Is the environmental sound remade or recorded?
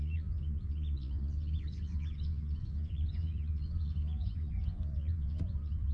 remade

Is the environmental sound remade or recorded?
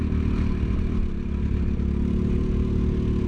recorded